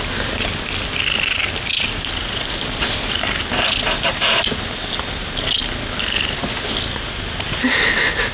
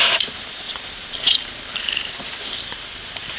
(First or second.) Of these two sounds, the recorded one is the first